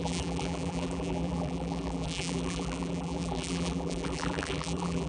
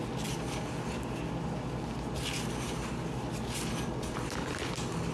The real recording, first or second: second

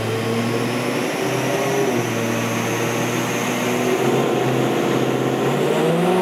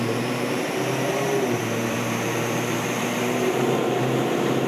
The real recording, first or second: first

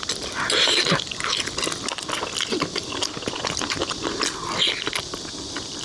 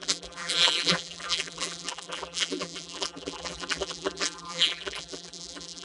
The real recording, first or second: first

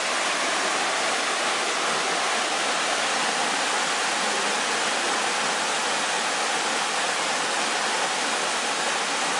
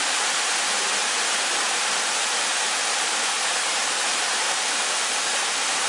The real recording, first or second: first